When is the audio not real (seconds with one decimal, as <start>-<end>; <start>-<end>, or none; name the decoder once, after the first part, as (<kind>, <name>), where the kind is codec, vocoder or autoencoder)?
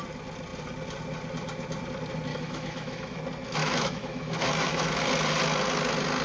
2.3-3.2 (autoencoder, DAC-VAE); 3.6-5.0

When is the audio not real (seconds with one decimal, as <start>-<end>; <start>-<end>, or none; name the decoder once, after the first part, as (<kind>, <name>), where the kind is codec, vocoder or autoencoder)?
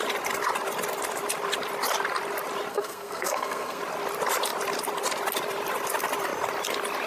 2.7-3.8 (codec, SNAC)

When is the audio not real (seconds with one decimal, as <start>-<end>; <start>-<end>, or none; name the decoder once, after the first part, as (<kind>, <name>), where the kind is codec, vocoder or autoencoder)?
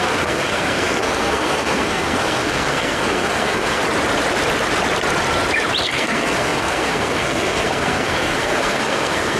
0.0-3.8 (codec, SNAC); 5.8-9.4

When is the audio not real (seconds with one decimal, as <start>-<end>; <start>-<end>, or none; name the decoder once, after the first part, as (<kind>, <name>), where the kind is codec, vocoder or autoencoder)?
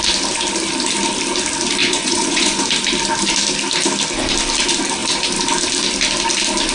1.8-2.6 (vocoder, Vocos)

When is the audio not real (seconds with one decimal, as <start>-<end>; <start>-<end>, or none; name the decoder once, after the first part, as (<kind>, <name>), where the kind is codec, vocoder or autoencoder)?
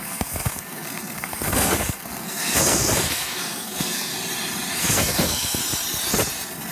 0.0-4.1 (codec, SNAC); 4.8-5.6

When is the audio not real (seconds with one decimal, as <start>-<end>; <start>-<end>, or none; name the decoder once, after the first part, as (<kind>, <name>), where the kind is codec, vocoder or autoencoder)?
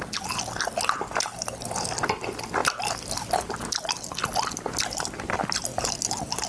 none